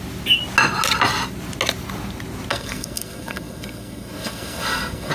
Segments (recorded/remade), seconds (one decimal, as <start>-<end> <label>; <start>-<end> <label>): 0.0-2.5 recorded; 2.5-5.1 remade